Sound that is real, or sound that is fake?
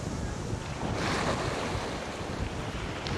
real